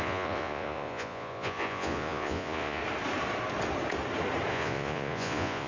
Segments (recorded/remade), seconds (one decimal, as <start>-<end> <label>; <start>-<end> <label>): 0.0-2.8 remade; 2.8-4.5 recorded; 4.5-5.7 remade